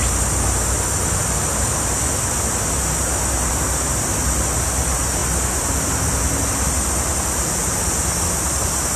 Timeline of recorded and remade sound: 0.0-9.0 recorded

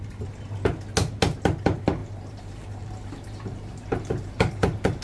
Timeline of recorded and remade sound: 0.0-2.0 recorded; 2.0-5.0 remade

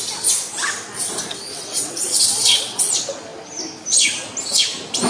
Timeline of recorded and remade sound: 0.0-1.5 recorded; 1.5-2.9 remade; 2.9-5.1 recorded

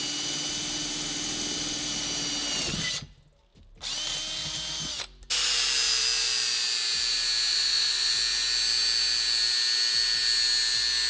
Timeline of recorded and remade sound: 0.0-7.5 recorded; 7.5-8.1 remade; 8.1-11.1 recorded

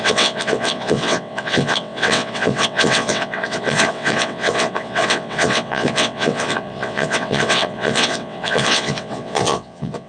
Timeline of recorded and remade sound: 0.0-10.1 remade

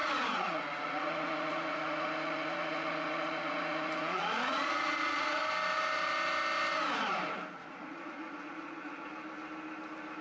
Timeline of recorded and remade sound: 0.0-5.4 remade; 5.4-7.7 recorded; 7.7-9.1 remade; 9.1-10.2 recorded